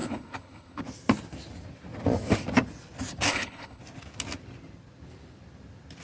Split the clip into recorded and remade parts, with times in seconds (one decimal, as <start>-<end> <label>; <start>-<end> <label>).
0.0-0.8 remade; 0.8-3.3 recorded; 3.3-3.8 remade; 3.8-6.0 recorded